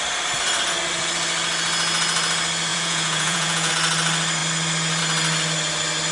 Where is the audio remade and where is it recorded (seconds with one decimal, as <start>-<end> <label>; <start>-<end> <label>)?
0.0-2.7 recorded; 2.7-3.7 remade; 3.7-6.1 recorded